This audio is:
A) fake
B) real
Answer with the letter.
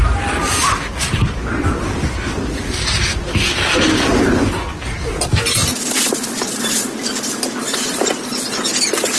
B